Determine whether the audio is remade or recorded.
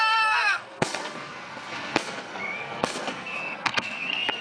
remade